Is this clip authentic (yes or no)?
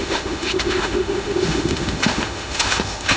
no